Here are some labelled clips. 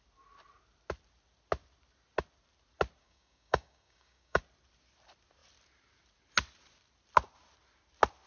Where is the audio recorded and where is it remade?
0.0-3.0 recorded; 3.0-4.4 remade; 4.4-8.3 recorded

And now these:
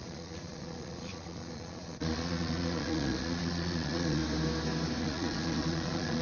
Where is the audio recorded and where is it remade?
0.0-4.2 remade; 4.2-5.0 recorded; 5.0-6.2 remade

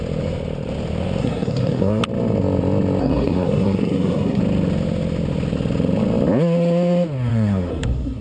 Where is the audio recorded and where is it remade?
0.0-1.2 recorded; 1.2-2.0 remade; 2.0-3.0 recorded; 3.0-4.4 remade; 4.4-7.3 recorded; 7.3-8.2 remade

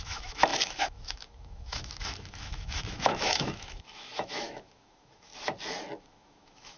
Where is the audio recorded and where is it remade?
0.0-5.3 remade; 5.3-6.0 recorded; 6.0-6.8 remade